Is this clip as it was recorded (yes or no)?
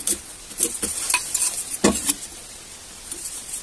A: yes